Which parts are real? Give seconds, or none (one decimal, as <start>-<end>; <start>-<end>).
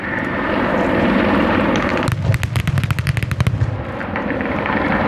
1.9-2.6; 3.1-4.2